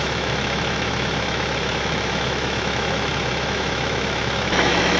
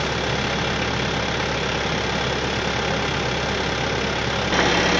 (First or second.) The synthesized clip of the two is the first